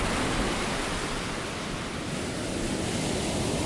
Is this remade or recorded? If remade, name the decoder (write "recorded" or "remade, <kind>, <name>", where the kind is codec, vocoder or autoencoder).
recorded